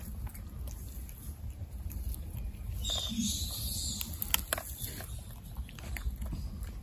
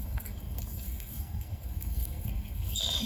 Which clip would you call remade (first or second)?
second